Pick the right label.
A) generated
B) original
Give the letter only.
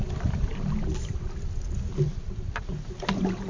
B